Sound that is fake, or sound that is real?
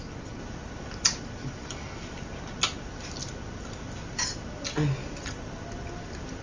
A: real